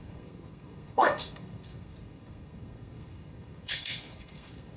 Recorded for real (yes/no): no